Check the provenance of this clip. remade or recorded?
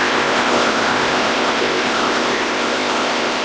remade